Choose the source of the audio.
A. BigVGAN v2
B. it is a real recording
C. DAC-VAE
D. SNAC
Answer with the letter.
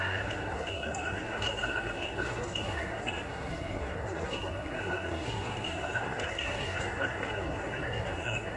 D